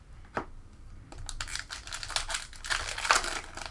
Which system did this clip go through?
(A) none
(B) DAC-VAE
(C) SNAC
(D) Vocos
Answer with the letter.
A